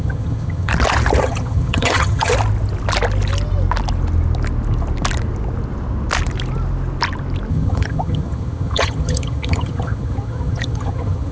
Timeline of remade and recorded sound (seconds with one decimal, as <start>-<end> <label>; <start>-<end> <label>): 0.0-0.7 remade; 0.7-1.2 recorded; 1.2-2.3 remade; 2.3-7.5 recorded; 7.5-11.3 remade